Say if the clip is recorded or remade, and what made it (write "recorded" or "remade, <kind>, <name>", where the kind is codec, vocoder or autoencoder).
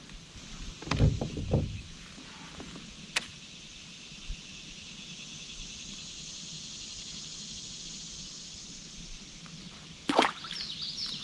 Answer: recorded